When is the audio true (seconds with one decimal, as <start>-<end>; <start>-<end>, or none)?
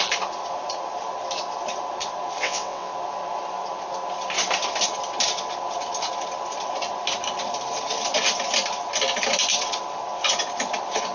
0.0-2.4; 2.9-11.1